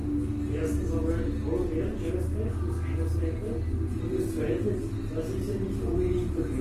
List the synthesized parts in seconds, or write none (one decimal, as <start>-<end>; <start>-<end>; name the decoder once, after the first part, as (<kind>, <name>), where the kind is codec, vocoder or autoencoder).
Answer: none